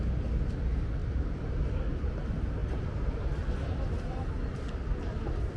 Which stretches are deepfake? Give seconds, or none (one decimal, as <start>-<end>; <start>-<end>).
none